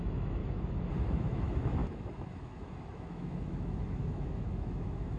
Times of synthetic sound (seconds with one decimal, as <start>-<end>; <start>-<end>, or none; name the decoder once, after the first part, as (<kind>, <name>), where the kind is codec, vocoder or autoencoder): 0.0-0.4 (autoencoder, DAC-VAE); 1.0-5.2